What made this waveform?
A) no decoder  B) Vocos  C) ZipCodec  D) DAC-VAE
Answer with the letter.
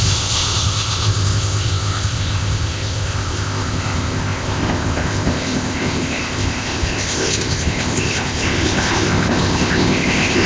C